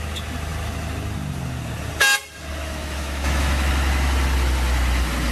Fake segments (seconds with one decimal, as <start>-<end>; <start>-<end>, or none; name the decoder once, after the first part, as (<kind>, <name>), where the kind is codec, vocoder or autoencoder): 2.6-3.7 (autoencoder, DAC-VAE)